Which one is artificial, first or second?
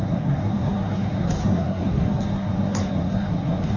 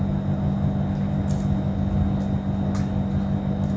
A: first